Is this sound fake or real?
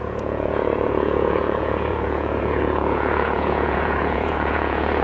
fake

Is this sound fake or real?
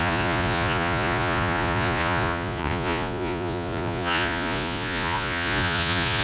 fake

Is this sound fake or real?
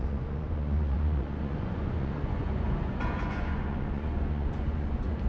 fake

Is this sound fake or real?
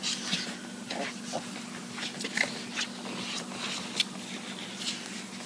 real